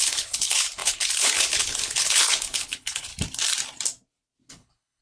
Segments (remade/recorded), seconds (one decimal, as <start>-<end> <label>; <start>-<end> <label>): 0.0-3.1 remade; 3.1-4.5 recorded; 4.5-5.0 remade